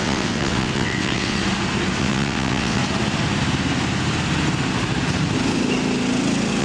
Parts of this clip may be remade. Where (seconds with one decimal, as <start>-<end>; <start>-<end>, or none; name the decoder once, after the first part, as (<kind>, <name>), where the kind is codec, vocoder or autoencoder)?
0.0-1.4 (vocoder, WaveNeXt); 2.0-2.8